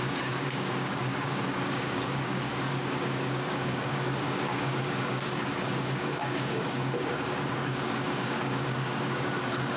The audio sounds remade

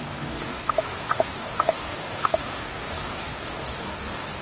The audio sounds remade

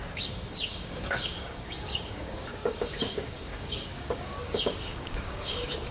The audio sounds remade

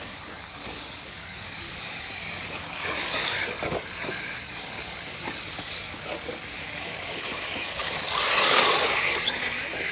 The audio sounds remade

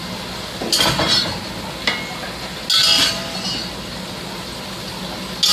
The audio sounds recorded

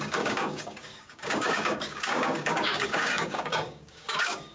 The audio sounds remade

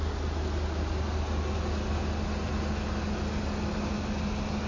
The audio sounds recorded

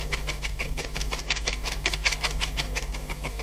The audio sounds remade